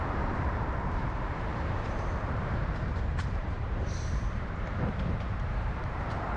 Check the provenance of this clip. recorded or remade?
remade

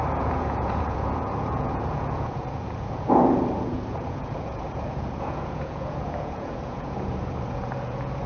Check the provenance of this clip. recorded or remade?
remade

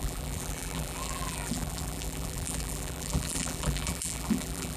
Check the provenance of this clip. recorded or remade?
remade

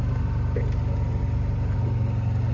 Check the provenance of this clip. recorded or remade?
recorded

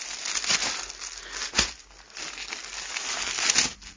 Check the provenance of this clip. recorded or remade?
recorded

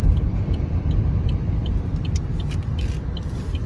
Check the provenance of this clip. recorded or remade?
remade